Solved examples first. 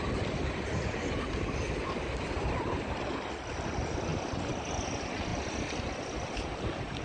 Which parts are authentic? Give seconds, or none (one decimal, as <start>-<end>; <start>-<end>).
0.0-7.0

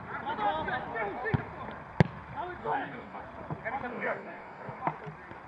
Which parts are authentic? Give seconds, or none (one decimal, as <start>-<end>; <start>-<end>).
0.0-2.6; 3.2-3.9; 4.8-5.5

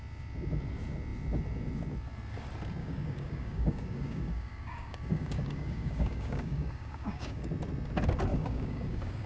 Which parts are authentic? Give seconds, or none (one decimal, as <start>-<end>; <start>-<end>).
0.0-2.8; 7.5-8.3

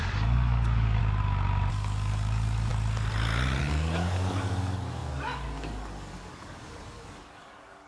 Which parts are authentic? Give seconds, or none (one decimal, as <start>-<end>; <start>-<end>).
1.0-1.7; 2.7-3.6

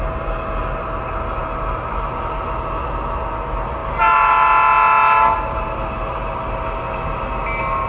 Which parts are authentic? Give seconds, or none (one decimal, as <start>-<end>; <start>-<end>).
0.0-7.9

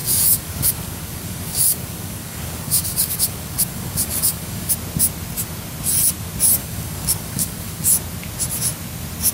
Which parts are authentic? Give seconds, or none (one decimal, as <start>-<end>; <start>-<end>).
4.7-6.6; 7.9-9.3

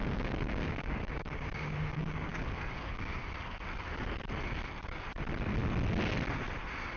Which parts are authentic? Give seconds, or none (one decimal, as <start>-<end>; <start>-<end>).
3.2-7.0